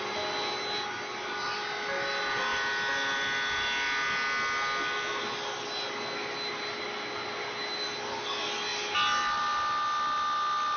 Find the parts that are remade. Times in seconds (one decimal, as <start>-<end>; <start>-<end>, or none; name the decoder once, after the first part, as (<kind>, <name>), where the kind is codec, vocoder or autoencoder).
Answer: none